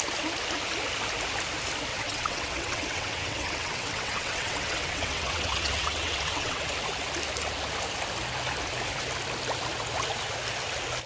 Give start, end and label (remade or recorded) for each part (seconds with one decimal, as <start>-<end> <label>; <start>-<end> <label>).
0.0-1.9 recorded; 1.9-6.7 remade; 6.7-11.1 recorded